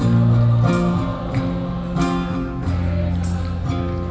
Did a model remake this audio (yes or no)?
no